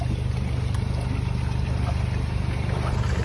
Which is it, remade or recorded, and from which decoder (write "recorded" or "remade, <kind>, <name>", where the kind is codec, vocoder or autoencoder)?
recorded